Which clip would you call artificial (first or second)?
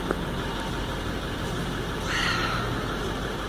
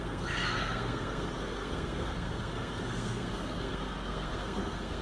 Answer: second